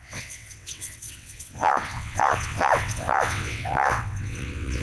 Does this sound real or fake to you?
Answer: fake